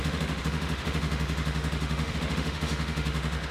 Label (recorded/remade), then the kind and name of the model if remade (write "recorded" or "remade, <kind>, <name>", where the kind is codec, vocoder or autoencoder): remade, autoencoder, DAC-VAE